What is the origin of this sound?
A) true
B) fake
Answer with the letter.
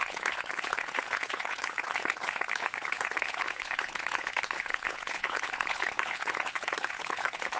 B